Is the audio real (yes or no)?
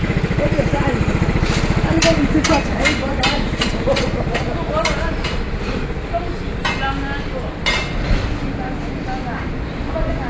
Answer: yes